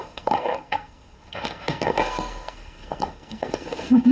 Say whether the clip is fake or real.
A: fake